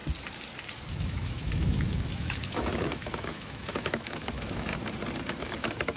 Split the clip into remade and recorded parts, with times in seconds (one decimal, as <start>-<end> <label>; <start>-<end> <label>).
0.0-0.9 recorded; 0.9-4.7 remade; 4.7-5.4 recorded; 5.4-6.0 remade